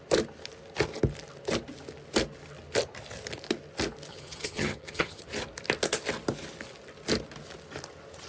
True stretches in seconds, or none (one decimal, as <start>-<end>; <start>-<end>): 0.0-4.1; 5.2-8.3